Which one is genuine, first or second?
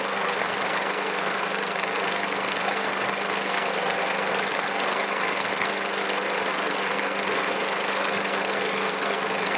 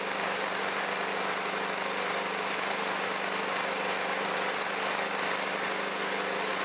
second